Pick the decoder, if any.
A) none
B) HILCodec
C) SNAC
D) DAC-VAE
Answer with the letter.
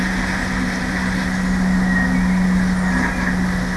A